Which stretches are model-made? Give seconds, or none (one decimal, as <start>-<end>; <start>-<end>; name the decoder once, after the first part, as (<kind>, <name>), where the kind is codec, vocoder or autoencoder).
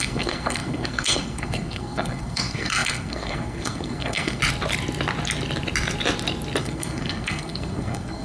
0.0-4.4 (codec, SNAC); 6.6-8.2